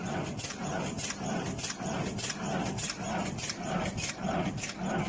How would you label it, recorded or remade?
recorded